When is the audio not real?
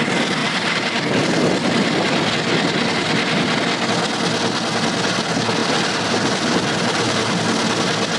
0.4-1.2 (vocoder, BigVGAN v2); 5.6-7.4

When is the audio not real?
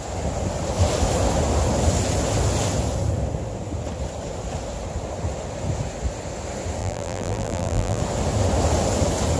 6.8-8.0 (vocoder, BigVGAN v2)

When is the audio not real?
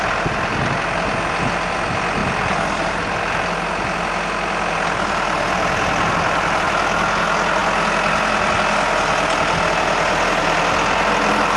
none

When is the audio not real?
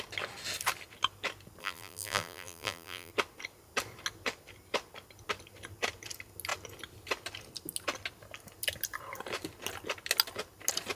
1.6-3.1 (vocoder, BigVGAN v2)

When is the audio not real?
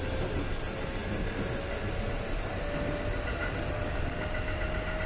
none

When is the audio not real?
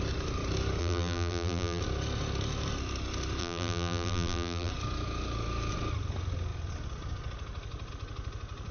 0.8-1.8 (vocoder, BigVGAN v2); 3.4-4.7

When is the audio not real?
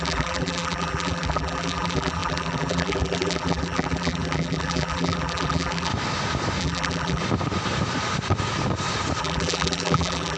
0.0-5.9 (vocoder, BigVGAN v2); 6.6-7.2; 9.2-10.4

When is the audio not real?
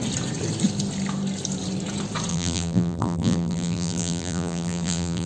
2.3-5.3 (vocoder, BigVGAN v2)